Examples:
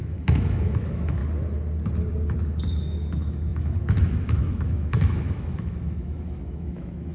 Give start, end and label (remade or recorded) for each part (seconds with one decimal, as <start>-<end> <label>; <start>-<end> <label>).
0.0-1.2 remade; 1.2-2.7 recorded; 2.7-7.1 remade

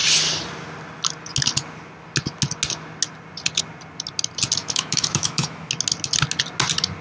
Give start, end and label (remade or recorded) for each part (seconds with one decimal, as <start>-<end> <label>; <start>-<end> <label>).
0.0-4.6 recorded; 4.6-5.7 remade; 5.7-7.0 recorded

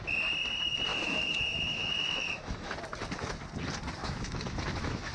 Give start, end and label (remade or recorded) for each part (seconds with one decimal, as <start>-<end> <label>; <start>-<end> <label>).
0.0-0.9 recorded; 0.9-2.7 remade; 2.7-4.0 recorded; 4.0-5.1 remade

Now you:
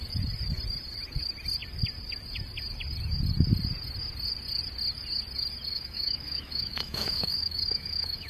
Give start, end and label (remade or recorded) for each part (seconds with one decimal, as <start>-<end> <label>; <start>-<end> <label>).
0.0-5.7 recorded; 5.7-8.3 remade

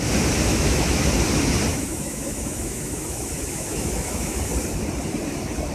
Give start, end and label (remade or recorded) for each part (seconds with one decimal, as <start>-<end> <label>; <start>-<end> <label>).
0.0-0.5 recorded; 0.5-1.1 remade; 1.1-1.7 recorded; 1.7-4.4 remade; 4.4-5.7 recorded

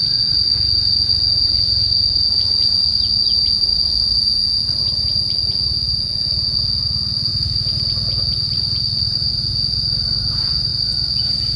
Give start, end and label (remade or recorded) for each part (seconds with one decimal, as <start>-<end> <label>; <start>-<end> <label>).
0.0-11.6 recorded

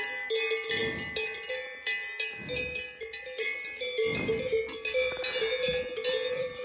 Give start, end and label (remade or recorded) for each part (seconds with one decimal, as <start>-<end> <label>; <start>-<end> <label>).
0.0-6.6 recorded

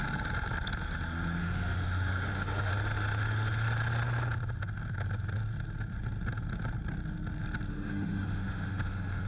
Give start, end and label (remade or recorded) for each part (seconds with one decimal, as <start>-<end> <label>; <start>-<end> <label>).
0.0-1.4 recorded; 1.4-2.7 remade; 2.7-7.7 recorded; 7.7-9.3 remade